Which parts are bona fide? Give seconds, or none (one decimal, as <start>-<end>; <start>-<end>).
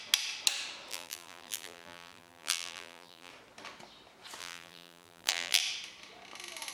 0.0-0.9; 3.3-4.4; 5.6-6.7